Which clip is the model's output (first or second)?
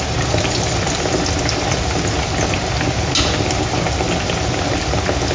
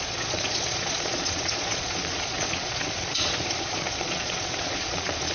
second